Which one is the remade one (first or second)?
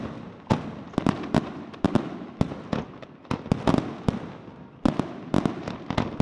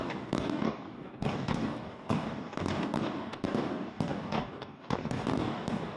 second